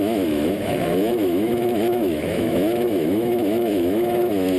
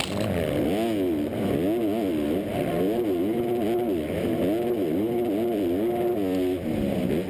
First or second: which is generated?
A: first